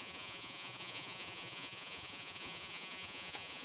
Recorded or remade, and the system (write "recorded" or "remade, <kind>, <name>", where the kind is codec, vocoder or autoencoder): remade, vocoder, Vocos